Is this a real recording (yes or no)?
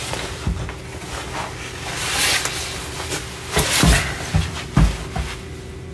yes